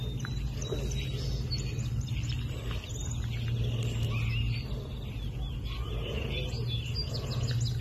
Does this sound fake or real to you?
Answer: real